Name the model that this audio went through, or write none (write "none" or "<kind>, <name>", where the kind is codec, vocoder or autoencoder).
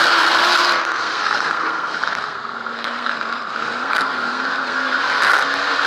codec, SNAC